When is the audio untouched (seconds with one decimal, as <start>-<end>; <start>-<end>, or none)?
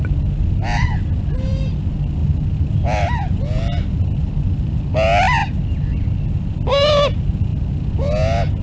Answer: 0.0-8.6